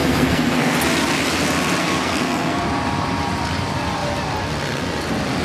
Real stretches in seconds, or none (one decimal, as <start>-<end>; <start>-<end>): 0.8-1.8; 2.6-5.4